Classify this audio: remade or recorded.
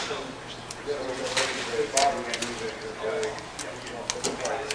recorded